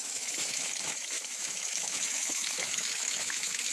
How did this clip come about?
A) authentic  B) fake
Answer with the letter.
B